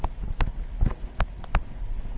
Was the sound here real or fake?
real